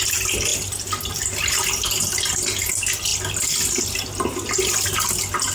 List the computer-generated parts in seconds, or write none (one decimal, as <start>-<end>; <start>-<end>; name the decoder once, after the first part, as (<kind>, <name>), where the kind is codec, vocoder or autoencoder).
none